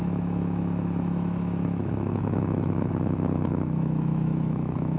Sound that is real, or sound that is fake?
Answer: fake